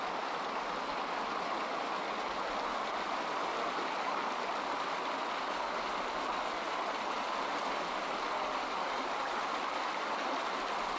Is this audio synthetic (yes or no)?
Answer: no